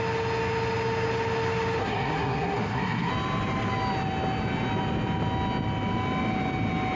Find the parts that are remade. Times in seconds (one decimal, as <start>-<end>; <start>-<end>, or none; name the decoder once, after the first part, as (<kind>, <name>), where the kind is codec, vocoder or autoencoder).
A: 1.8-3.1 (codec, SNAC)